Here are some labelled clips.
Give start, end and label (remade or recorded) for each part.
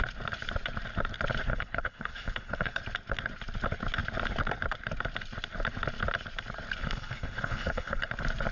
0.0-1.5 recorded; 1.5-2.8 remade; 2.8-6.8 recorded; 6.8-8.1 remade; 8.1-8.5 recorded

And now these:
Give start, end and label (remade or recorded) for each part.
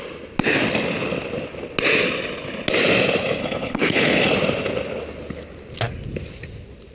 0.0-3.4 recorded; 3.4-4.3 remade; 4.3-6.9 recorded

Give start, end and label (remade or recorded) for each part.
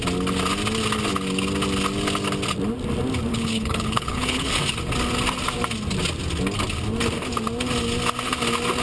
0.0-3.3 recorded; 3.3-4.5 remade; 4.5-8.8 recorded